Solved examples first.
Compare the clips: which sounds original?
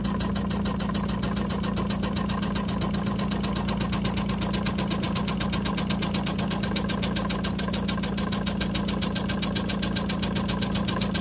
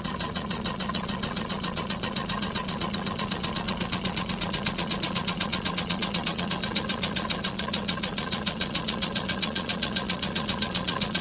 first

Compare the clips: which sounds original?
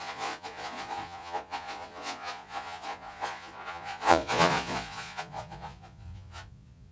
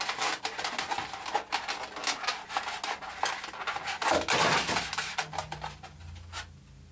second